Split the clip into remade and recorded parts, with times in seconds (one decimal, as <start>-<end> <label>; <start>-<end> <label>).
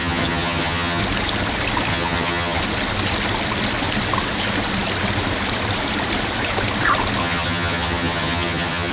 0.0-1.0 remade; 1.0-1.9 recorded; 1.9-2.6 remade; 2.6-7.2 recorded; 7.2-8.9 remade